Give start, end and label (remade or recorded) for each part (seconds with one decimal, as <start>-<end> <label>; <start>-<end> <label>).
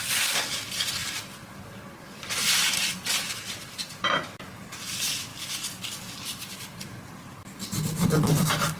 0.0-1.0 recorded; 1.0-4.7 remade; 4.7-8.8 recorded